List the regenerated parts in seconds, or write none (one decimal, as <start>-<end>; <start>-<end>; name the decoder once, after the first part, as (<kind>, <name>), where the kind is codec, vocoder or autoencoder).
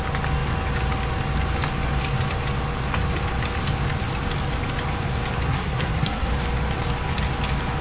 5.5-6.3 (codec, SNAC)